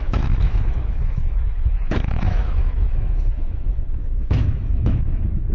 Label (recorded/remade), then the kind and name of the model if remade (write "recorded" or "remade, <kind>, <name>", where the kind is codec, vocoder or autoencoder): remade, autoencoder, DAC-VAE